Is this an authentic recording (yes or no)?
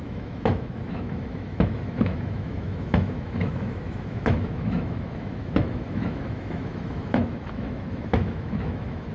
no